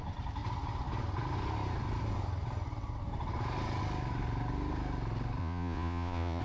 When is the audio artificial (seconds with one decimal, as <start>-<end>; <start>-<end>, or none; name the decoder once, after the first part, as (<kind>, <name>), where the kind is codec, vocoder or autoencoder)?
5.4-6.4 (vocoder, Vocos)